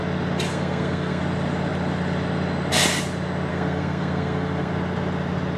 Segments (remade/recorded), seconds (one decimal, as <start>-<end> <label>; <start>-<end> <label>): 0.0-0.5 recorded; 0.5-1.2 remade; 1.2-3.5 recorded; 3.5-4.7 remade; 4.7-5.6 recorded